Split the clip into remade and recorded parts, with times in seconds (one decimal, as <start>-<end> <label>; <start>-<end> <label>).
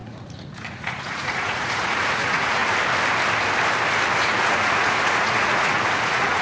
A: 0.0-2.6 remade; 2.6-4.2 recorded; 4.2-6.4 remade